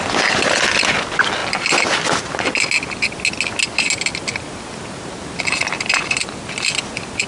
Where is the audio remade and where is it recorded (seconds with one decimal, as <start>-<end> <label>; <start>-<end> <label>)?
0.0-7.3 recorded